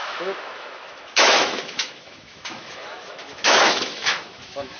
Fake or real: fake